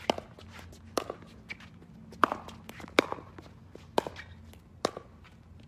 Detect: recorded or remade recorded